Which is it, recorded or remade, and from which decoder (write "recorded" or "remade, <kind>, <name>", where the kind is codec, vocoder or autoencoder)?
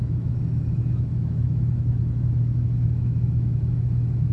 remade, autoencoder, DAC-VAE